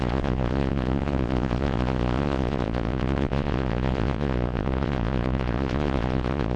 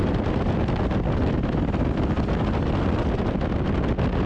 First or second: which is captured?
second